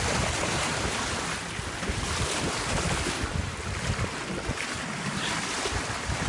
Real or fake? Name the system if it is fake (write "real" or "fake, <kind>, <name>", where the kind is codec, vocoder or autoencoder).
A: real